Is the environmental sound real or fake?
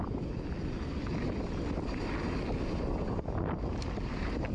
real